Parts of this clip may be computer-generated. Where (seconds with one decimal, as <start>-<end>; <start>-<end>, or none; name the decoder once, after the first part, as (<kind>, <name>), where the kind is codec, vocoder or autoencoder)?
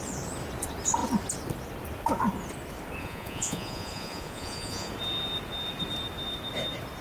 3.0-4.9 (vocoder, Vocos)